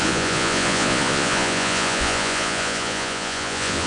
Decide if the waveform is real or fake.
fake